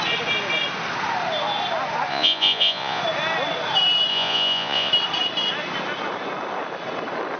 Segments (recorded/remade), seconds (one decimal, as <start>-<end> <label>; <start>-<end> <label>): 0.0-2.1 recorded; 2.1-3.0 remade; 3.0-4.1 recorded; 4.1-4.9 remade; 4.9-7.4 recorded